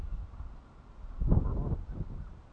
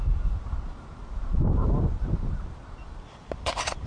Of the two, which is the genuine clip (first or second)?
first